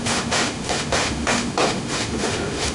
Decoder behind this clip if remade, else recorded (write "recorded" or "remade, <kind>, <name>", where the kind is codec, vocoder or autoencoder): remade, autoencoder, DAC-VAE